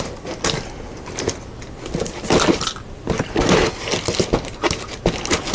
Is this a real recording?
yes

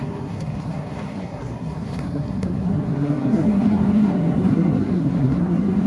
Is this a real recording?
no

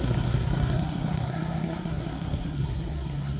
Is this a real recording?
no